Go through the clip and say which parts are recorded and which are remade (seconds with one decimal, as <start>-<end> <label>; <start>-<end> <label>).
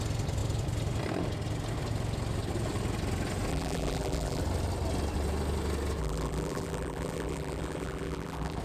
0.0-3.5 recorded; 3.5-4.4 remade; 4.4-6.0 recorded; 6.0-8.6 remade